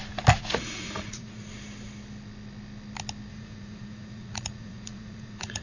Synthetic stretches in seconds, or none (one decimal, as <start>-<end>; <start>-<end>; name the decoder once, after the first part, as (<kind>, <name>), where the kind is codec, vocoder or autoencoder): 0.4-1.5 (vocoder, Vocos); 3.3-5.6